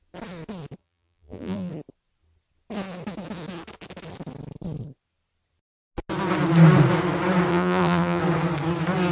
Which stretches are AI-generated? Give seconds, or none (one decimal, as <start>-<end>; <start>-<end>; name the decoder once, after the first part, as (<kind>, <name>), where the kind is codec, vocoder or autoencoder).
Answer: 0.8-1.7 (vocoder, BigVGAN v2); 7.5-8.2